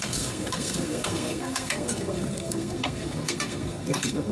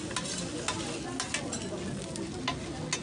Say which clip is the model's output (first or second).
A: first